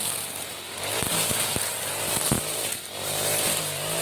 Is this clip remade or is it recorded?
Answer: remade